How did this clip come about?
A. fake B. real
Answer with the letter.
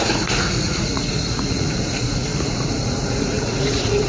A